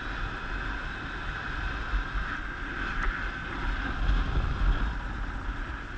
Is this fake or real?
real